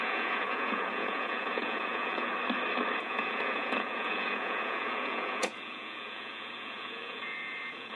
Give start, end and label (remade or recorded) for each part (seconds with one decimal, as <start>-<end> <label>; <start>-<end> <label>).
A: 0.0-2.3 remade; 2.3-3.0 recorded; 3.0-7.9 remade